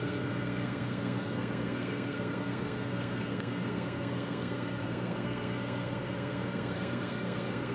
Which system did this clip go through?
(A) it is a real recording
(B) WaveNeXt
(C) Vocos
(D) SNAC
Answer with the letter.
D